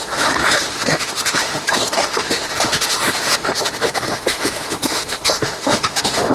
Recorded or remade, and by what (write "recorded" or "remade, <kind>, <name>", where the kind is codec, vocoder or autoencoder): remade, autoencoder, DAC-VAE